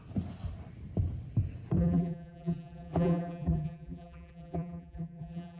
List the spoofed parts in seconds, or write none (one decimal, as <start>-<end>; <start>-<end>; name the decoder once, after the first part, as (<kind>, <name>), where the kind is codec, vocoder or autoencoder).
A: 1.8-5.6 (vocoder, BigVGAN v2)